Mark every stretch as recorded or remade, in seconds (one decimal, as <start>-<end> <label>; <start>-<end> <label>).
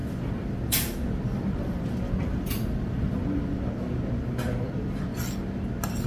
0.0-3.7 remade; 3.7-6.1 recorded